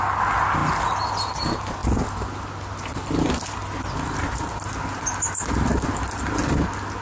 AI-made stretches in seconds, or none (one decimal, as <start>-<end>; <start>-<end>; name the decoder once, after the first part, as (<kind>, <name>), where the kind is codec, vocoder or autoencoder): none